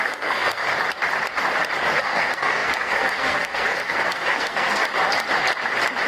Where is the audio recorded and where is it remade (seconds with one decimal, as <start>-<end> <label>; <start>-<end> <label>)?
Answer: 0.0-0.6 remade; 0.6-2.0 recorded; 2.0-4.8 remade; 4.8-6.1 recorded